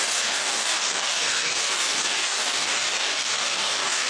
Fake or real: fake